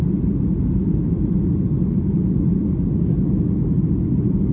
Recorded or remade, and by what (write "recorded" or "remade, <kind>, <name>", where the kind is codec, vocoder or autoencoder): recorded